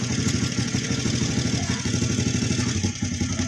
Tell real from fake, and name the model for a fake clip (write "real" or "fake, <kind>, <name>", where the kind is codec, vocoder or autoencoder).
fake, vocoder, Vocos